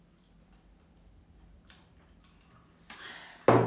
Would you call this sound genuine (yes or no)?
yes